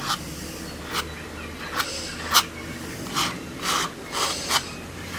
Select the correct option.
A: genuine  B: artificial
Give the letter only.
A